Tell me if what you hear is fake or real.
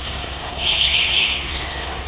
fake